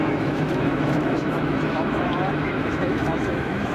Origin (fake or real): fake